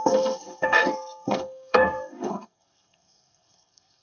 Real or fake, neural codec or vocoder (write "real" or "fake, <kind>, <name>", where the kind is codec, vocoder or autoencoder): fake, codec, SNAC